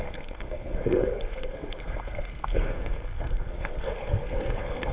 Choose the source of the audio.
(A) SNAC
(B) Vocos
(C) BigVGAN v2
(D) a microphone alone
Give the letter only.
A